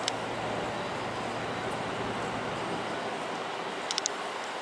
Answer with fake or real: real